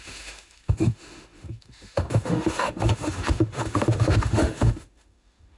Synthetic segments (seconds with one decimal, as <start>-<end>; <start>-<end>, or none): 0.0-5.6